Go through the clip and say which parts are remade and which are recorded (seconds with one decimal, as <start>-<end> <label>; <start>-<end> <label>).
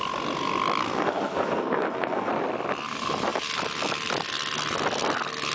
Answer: 0.0-0.8 recorded; 0.8-2.3 remade; 2.3-5.5 recorded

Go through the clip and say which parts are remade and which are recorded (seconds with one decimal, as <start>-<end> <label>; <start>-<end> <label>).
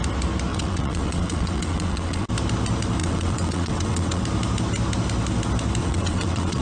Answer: 0.0-0.5 recorded; 0.5-2.3 remade; 2.3-3.0 recorded; 3.0-4.2 remade; 4.2-5.8 recorded; 5.8-6.6 remade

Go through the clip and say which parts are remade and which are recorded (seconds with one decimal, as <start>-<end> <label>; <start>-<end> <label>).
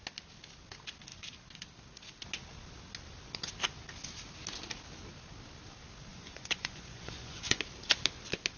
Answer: 0.0-6.1 recorded; 6.1-7.6 remade; 7.6-8.6 recorded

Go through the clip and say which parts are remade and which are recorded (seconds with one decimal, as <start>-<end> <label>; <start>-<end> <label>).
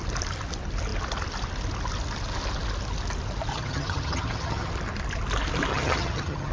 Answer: 0.0-3.5 recorded; 3.5-4.7 remade; 4.7-5.7 recorded; 5.7-6.5 remade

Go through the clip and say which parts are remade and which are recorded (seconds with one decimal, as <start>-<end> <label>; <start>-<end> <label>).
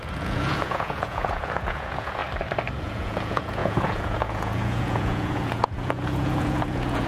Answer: 0.0-2.2 remade; 2.2-2.8 recorded; 2.8-7.1 remade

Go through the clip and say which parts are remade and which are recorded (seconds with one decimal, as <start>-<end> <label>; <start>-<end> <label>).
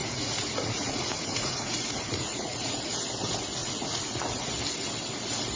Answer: 0.0-2.9 remade; 2.9-3.6 recorded; 3.6-4.4 remade; 4.4-5.6 recorded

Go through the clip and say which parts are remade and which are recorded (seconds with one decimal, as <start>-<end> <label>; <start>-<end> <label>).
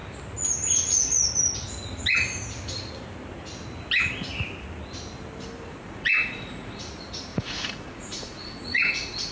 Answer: 0.0-5.7 recorded; 5.7-6.8 remade; 6.8-7.3 recorded; 7.3-9.3 remade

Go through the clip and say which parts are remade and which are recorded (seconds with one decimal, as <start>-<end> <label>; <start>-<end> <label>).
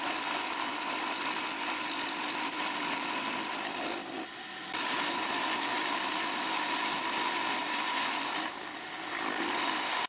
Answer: 0.0-10.1 recorded